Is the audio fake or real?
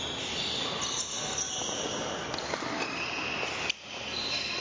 real